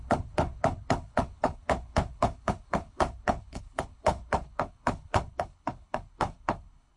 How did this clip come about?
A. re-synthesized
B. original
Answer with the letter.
A